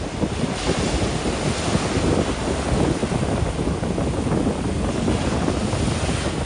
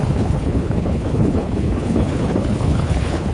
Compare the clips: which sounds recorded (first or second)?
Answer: first